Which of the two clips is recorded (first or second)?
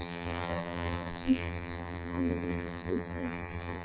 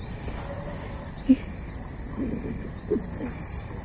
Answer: second